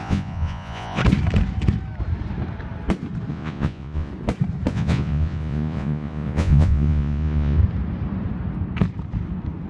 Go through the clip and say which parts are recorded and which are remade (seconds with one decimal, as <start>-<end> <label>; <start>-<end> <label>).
0.0-1.0 remade; 1.0-3.3 recorded; 3.3-4.1 remade; 4.1-4.7 recorded; 4.7-7.6 remade; 7.6-9.7 recorded